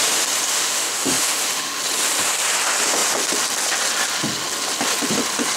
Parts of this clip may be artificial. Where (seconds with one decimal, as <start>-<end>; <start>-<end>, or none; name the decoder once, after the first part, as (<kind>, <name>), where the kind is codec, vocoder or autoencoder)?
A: 0.5-1.8 (autoencoder, DAC-VAE)